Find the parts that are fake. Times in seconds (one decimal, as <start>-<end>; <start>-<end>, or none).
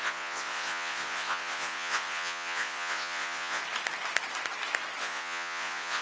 0.0-3.6; 5.0-6.0